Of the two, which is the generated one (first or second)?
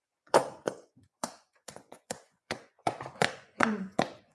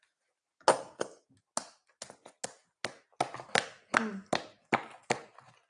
first